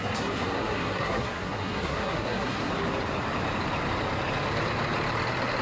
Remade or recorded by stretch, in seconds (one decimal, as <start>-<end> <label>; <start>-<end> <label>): 0.0-2.7 remade; 2.7-5.6 recorded

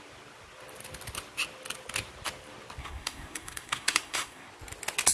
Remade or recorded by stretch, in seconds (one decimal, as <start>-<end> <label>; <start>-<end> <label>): 0.0-2.8 recorded; 2.8-4.5 remade; 4.5-5.1 recorded

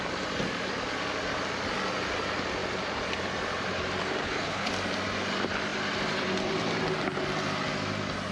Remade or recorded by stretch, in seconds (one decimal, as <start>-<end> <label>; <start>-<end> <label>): 0.0-4.2 recorded; 4.2-4.7 remade; 4.7-8.3 recorded